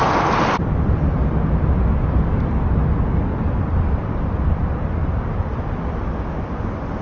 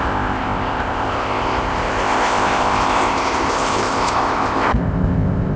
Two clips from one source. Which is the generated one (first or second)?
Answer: second